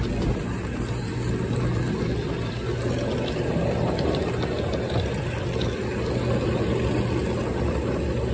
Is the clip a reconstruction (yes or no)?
no